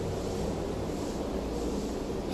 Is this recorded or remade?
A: recorded